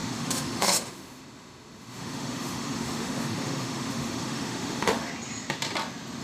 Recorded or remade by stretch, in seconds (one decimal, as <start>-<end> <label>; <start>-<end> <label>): 0.0-5.1 remade; 5.1-6.2 recorded

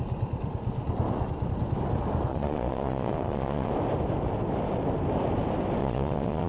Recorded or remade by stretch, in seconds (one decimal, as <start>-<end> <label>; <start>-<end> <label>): 0.0-2.3 recorded; 2.3-3.7 remade; 3.7-5.8 recorded; 5.8-6.5 remade

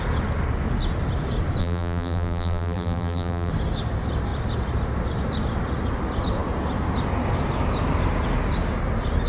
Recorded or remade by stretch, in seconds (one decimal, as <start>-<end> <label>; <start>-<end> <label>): 0.0-1.6 recorded; 1.6-3.5 remade; 3.5-9.3 recorded

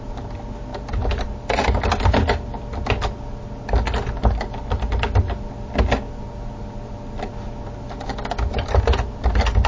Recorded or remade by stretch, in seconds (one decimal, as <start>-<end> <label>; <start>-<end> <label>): 0.0-9.7 recorded

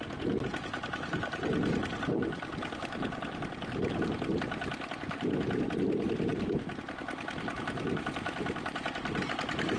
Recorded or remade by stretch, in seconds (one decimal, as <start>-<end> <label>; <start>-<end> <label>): 0.0-9.8 recorded